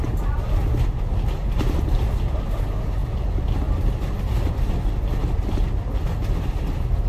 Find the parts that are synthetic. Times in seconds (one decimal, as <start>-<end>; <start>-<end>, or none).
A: none